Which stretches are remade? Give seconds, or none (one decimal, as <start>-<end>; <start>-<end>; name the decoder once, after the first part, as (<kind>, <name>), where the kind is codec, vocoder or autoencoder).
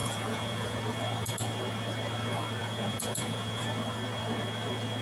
0.0-0.8 (vocoder, Vocos); 2.6-3.6